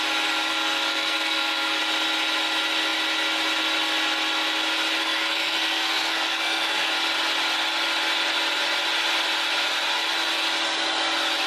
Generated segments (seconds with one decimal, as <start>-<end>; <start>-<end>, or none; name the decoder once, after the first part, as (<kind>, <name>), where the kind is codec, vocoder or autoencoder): 0.5-1.8 (codec, SNAC); 5.0-6.9